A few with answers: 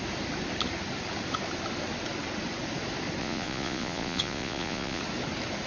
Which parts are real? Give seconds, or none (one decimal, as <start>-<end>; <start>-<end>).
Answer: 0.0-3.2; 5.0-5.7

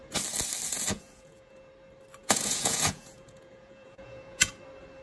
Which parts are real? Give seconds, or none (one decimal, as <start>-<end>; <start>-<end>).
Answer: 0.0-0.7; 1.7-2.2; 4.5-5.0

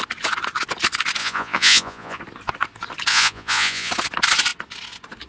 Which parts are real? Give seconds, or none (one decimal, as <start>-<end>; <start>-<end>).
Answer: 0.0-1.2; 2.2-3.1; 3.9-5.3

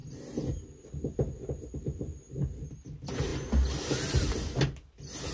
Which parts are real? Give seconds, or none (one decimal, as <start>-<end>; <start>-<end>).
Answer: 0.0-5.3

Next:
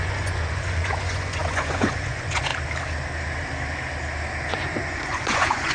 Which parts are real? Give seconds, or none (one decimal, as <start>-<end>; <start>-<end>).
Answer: 2.5-4.5

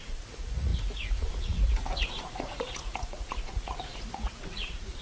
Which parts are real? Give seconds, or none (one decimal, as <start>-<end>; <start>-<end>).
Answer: none

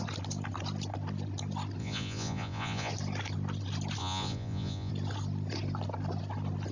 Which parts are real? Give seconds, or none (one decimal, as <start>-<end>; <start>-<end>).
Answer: 0.0-1.8; 2.9-4.0; 4.9-6.7

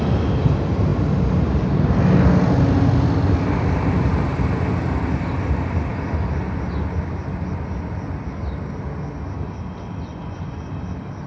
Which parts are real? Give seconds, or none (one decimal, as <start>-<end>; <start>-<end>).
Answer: 0.0-10.1; 10.7-11.3